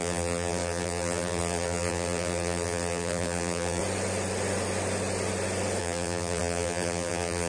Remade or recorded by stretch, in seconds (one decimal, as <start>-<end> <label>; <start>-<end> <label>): 0.0-3.8 remade; 3.8-5.8 recorded; 5.8-7.5 remade